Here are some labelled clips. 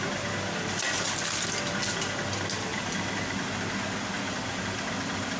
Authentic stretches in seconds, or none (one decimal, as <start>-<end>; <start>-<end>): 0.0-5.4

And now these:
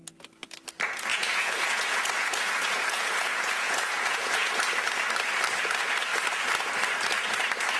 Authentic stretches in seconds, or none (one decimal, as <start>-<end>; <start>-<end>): 0.0-1.1; 4.5-7.8

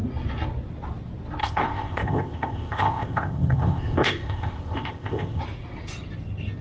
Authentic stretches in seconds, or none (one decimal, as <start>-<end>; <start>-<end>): 0.0-1.4; 5.4-6.6